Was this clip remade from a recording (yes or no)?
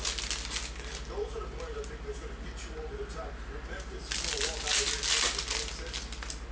no